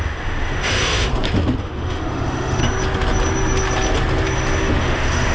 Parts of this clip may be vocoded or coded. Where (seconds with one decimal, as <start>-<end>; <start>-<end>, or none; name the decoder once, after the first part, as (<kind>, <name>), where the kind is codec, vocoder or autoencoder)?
0.0-1.1 (autoencoder, DAC-VAE); 1.6-2.6; 4.8-5.3